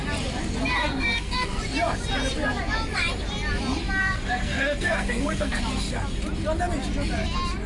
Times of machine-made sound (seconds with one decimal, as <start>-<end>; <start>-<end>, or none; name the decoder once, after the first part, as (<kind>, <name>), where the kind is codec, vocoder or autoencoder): 0.8-1.6 (codec, SNAC); 4.0-5.6